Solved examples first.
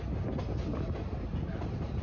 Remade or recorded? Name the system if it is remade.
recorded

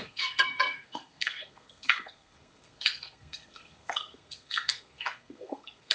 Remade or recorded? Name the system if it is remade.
remade, codec, SNAC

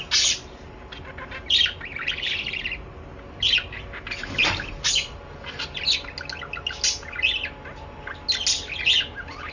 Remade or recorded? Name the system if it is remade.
recorded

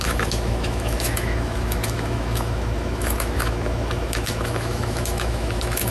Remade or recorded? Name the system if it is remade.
remade, autoencoder, DAC-VAE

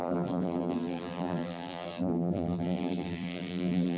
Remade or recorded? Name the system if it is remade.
remade, vocoder, BigVGAN v2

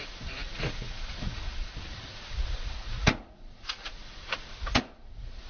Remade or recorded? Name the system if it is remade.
remade, vocoder, Vocos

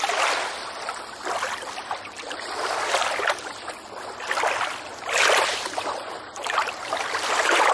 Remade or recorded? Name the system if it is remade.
recorded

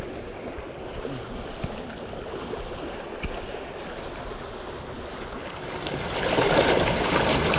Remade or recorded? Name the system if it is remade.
recorded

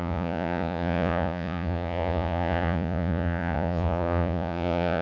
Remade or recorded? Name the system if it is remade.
remade, vocoder, Vocos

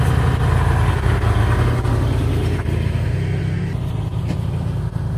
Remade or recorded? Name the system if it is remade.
recorded